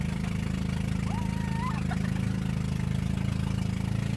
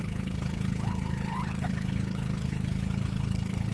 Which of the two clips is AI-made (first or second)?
second